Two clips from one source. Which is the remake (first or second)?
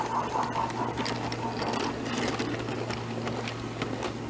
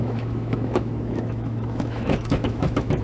second